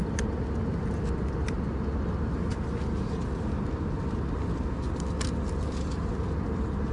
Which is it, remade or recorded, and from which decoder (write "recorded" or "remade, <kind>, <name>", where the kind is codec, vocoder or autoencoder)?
recorded